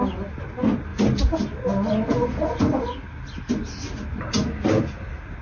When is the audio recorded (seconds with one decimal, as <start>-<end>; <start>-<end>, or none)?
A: 0.0-5.4